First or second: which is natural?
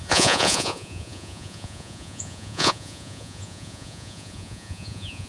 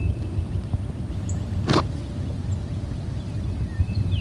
second